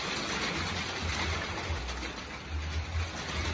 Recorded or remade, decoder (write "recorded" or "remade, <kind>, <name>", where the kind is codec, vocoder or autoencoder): recorded